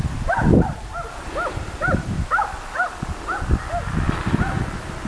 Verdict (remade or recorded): recorded